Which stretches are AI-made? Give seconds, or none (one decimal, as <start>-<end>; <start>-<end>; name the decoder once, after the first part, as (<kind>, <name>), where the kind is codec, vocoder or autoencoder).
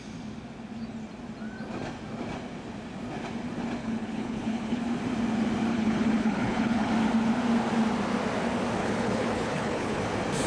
3.8-4.8 (codec, HILCodec); 5.7-6.9; 8.8-10.0